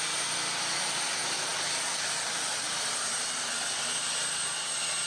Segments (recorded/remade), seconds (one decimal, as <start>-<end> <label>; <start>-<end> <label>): 0.0-5.1 recorded